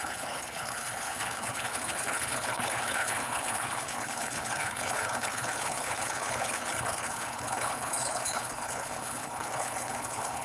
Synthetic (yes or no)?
yes